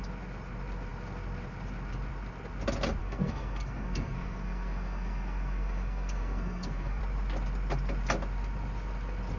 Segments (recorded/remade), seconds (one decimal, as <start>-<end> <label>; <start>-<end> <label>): 0.0-3.0 recorded; 3.0-7.0 remade; 7.0-9.4 recorded

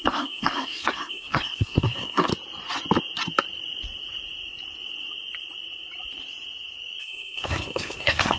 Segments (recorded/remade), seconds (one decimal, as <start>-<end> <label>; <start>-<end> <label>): 0.0-2.3 remade; 2.3-7.0 recorded; 7.0-8.4 remade

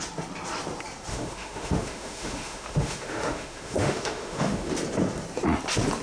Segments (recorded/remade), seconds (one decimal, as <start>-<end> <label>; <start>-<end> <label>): 0.0-1.1 recorded; 1.1-4.7 remade; 4.7-6.0 recorded